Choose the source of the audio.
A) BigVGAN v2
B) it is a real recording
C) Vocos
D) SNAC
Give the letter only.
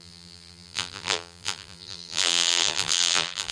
A